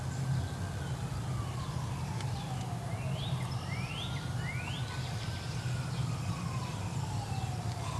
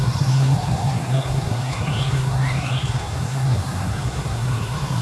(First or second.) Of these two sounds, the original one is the first